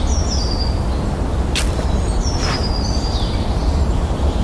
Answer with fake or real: fake